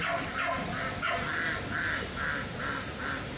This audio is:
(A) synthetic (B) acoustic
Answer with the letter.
B